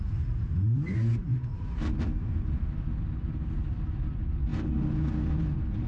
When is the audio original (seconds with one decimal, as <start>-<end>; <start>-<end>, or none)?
0.0-1.5; 2.7-5.9